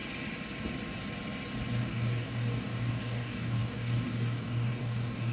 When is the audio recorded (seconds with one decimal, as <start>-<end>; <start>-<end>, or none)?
0.0-1.8